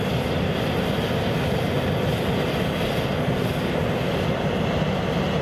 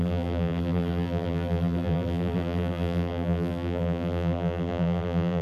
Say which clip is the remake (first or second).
second